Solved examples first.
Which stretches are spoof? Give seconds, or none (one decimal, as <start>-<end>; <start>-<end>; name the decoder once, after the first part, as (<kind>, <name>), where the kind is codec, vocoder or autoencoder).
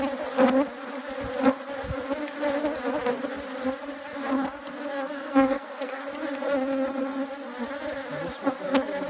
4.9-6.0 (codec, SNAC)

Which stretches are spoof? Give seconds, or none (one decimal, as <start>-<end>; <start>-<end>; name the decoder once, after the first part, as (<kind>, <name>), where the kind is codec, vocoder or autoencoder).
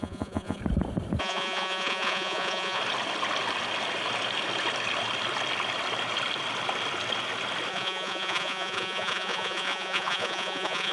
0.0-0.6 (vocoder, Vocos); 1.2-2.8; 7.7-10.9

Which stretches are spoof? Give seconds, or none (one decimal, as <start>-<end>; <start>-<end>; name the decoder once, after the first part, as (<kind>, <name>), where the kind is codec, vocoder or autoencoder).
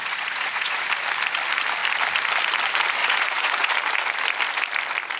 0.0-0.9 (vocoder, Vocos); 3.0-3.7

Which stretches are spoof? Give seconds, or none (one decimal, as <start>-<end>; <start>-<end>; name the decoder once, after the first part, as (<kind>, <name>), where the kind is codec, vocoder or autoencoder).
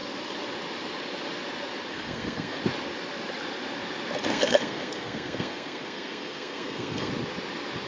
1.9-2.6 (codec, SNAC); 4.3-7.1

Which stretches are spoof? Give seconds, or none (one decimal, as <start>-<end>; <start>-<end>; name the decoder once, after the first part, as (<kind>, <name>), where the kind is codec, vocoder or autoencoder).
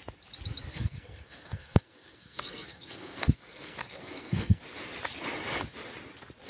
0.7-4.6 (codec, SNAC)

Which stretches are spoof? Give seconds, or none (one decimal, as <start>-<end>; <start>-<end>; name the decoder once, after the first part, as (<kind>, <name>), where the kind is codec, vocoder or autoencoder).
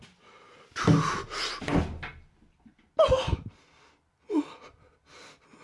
none